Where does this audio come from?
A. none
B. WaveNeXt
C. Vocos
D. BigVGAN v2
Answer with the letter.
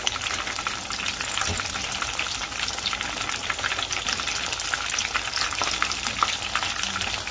A